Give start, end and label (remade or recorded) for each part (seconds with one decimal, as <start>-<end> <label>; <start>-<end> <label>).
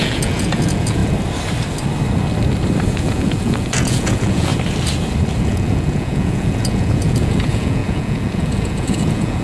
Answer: 0.0-1.0 remade; 1.0-3.0 recorded; 3.0-4.5 remade; 4.5-5.4 recorded; 5.4-9.4 remade